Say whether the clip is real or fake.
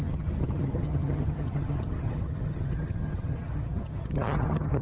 fake